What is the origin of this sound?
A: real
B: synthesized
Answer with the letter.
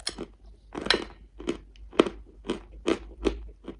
A